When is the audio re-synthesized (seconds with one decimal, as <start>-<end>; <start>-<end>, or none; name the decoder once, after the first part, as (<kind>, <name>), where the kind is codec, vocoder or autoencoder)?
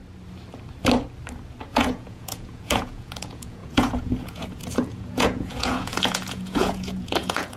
1.7-7.6 (vocoder, Vocos)